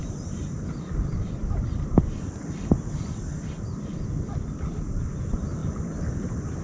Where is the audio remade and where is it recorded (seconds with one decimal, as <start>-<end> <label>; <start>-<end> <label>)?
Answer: 0.0-6.6 recorded